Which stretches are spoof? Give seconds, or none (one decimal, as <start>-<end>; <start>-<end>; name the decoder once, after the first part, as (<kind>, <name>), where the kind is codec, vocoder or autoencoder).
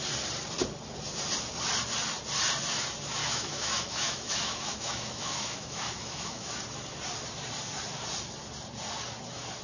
3.2-6.6 (autoencoder, DAC-VAE)